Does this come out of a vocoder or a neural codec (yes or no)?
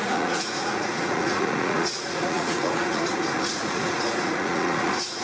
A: yes